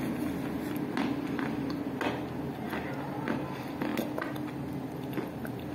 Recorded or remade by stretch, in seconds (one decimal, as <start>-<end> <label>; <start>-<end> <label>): 0.0-5.7 recorded

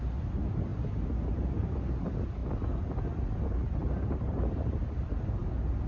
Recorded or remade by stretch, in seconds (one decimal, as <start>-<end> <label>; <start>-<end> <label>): 0.0-3.8 recorded; 3.8-5.4 remade; 5.4-5.9 recorded

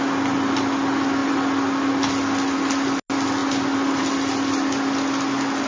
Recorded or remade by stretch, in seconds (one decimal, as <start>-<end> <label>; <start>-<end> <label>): 0.0-5.7 recorded